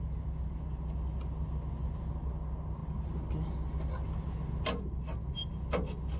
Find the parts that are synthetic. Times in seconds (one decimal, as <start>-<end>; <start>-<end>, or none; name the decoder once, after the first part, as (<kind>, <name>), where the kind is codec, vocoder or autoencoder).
none